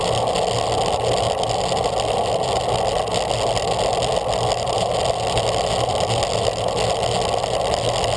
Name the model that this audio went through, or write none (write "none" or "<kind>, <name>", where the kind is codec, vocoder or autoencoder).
none